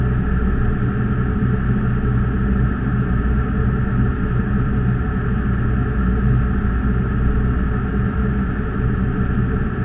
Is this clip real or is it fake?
real